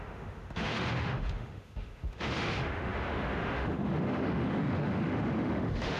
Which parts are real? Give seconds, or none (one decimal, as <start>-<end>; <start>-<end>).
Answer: none